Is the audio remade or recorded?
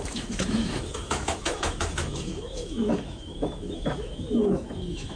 remade